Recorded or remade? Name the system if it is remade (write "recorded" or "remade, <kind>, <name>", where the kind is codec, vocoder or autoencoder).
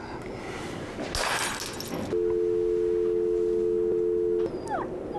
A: recorded